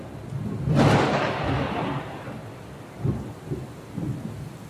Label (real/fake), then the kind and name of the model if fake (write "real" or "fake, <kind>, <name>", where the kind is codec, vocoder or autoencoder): real